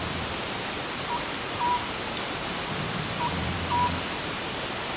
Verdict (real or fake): real